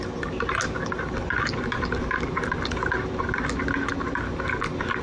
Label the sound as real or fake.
real